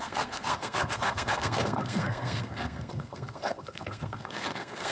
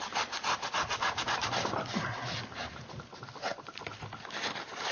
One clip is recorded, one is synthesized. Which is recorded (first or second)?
second